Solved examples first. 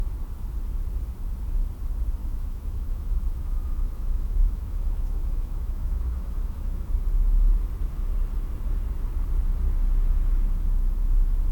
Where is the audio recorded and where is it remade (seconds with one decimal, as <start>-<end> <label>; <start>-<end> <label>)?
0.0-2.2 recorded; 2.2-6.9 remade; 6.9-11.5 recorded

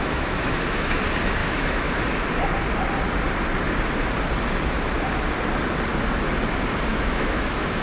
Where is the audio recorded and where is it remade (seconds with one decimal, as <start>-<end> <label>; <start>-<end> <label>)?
0.0-1.0 remade; 1.0-1.4 recorded; 1.4-2.0 remade; 2.0-6.9 recorded; 6.9-7.8 remade

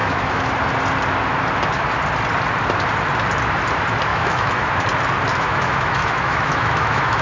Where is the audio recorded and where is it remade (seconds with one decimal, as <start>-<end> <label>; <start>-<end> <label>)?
0.0-0.5 remade; 0.5-4.1 recorded; 4.1-4.7 remade; 4.7-5.3 recorded; 5.3-7.2 remade